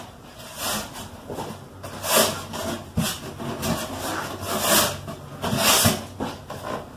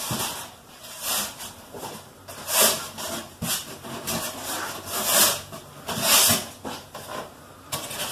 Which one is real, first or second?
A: first